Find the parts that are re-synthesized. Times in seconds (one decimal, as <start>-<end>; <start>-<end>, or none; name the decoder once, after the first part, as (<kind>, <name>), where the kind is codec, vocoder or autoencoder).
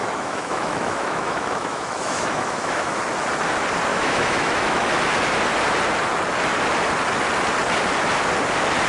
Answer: 0.0-3.0 (autoencoder, DAC-VAE); 3.9-4.9